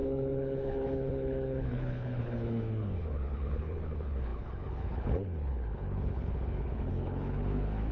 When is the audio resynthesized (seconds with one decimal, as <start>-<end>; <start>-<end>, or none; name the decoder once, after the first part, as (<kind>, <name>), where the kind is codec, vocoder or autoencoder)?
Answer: 0.0-7.9 (codec, HILCodec)